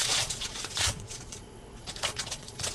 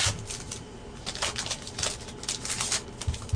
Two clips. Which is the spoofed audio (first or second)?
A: first